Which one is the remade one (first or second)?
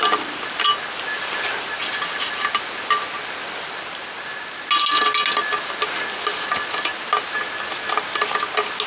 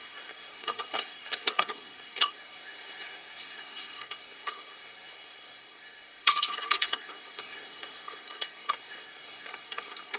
second